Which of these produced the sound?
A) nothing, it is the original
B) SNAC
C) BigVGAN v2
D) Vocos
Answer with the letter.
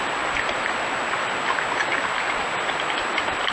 A